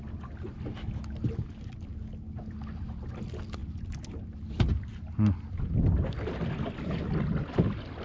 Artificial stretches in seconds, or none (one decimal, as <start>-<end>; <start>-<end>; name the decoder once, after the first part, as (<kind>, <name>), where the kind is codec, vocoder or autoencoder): none